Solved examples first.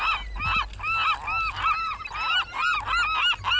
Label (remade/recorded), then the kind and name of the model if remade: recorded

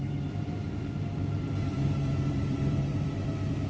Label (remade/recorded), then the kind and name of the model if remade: remade, vocoder, BigVGAN v2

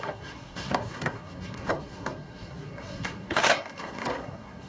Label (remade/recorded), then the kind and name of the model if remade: remade, codec, SNAC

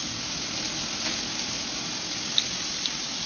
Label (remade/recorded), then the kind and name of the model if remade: recorded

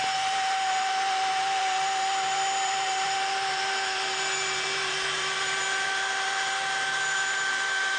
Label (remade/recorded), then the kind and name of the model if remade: remade, vocoder, BigVGAN v2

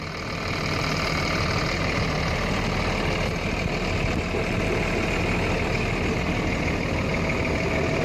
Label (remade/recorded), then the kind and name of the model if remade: recorded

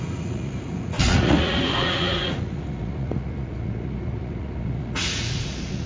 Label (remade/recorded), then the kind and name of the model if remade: remade, vocoder, Vocos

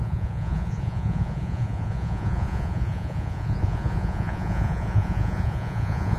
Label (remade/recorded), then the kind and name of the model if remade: remade, vocoder, Vocos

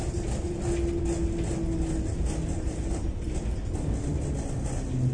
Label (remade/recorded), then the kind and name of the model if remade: recorded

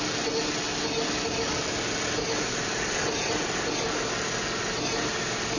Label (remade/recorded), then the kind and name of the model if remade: recorded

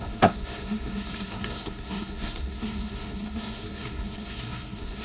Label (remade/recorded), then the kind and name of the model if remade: remade, codec, SNAC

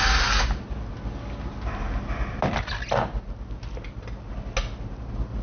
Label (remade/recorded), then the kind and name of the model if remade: recorded